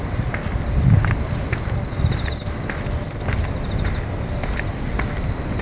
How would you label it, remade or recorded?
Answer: recorded